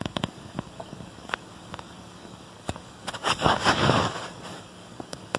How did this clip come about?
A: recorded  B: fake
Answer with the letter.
B